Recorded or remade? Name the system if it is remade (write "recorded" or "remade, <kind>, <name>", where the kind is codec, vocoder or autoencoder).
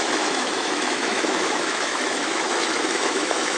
remade, autoencoder, DAC-VAE